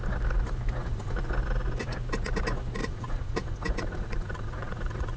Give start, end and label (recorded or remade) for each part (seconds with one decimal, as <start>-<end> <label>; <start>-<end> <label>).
0.0-0.8 recorded; 0.8-1.3 remade; 1.3-2.8 recorded; 2.8-5.2 remade